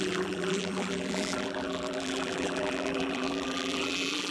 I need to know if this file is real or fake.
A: fake